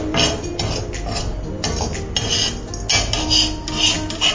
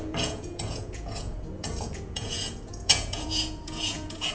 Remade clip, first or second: second